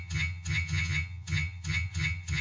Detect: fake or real fake